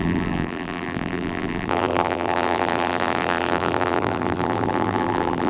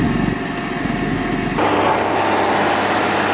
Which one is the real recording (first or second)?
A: second